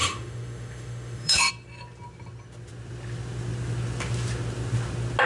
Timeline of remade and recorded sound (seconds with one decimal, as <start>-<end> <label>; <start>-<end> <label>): 0.0-1.5 remade; 1.5-5.3 recorded